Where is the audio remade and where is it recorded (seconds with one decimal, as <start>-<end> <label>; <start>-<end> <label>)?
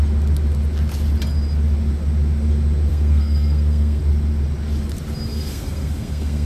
0.0-2.9 recorded; 2.9-4.0 remade; 4.0-5.3 recorded; 5.3-6.5 remade